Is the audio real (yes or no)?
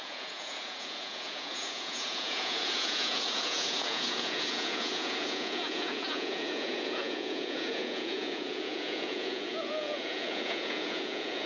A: no